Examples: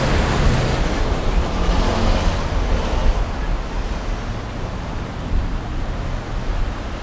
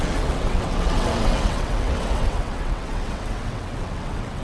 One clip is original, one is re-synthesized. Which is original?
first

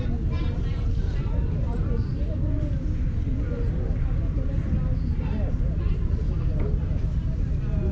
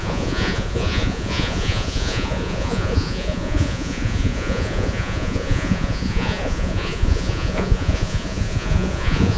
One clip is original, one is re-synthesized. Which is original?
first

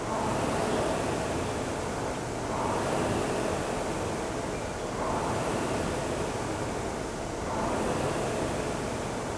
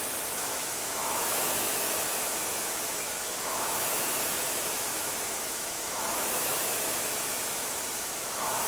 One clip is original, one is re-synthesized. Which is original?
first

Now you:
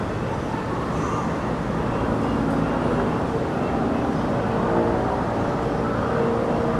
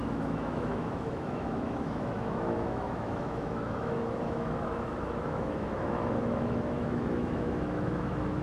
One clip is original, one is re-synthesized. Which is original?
first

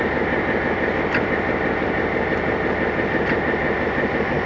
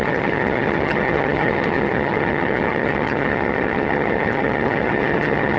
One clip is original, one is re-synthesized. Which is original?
first